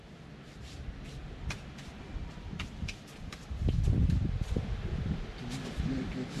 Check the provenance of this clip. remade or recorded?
recorded